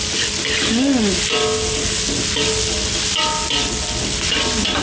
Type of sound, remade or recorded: recorded